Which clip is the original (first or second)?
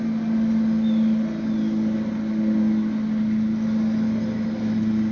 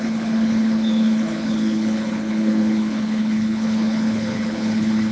first